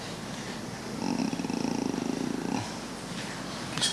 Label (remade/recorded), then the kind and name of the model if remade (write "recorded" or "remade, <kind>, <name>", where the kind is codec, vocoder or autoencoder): recorded